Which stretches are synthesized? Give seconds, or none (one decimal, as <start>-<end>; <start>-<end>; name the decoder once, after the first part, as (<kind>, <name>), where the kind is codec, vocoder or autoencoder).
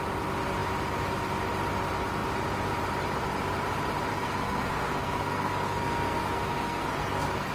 4.1-7.5 (codec, SNAC)